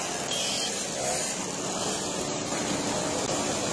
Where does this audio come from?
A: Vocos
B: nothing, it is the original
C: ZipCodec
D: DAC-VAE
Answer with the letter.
B